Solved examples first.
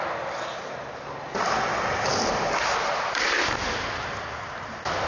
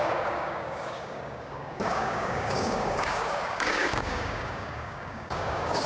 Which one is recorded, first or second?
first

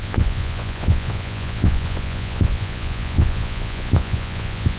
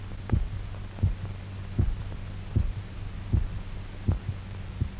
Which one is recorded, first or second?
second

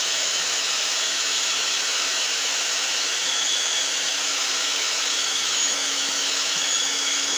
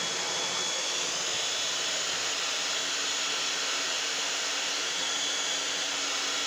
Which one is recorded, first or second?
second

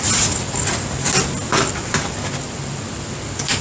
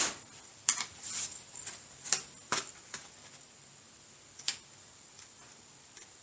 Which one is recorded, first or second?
second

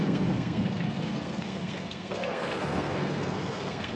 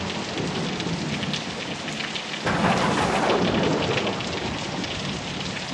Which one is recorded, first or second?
second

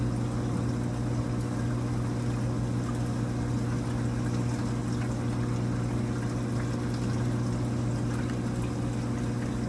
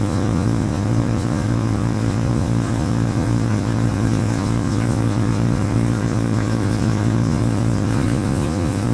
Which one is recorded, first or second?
first